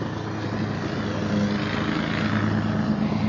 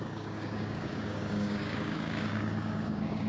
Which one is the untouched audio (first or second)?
first